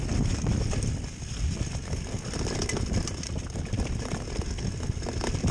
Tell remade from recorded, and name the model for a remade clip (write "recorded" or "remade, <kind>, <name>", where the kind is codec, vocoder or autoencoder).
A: recorded